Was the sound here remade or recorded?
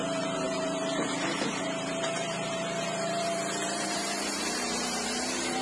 remade